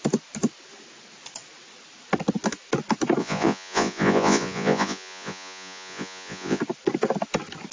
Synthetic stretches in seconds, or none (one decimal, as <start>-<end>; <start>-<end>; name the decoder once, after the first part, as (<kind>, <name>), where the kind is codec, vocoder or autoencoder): 3.2-6.6 (vocoder, Vocos)